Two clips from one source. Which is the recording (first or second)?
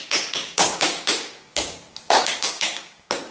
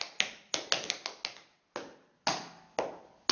second